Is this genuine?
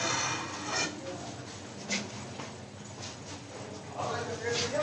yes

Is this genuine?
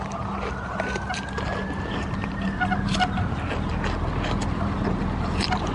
yes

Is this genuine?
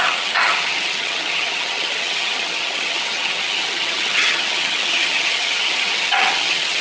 no